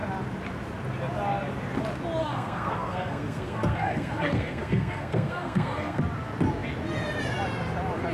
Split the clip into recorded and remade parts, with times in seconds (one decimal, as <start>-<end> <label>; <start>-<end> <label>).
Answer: 0.0-2.2 recorded; 2.2-6.0 remade; 6.0-8.1 recorded